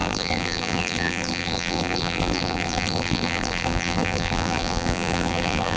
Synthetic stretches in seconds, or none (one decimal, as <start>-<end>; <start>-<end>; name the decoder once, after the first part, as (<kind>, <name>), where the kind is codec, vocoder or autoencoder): 0.0-5.8 (vocoder, BigVGAN v2)